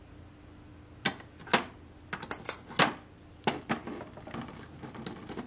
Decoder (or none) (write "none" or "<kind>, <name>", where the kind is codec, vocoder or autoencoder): none